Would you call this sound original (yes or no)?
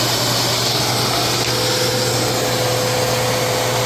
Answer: yes